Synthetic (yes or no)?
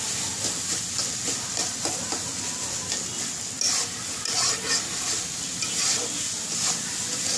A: no